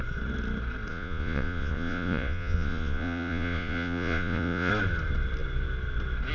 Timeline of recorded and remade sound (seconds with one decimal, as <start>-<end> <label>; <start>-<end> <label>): 0.0-0.9 recorded; 0.9-4.7 remade; 4.7-6.3 recorded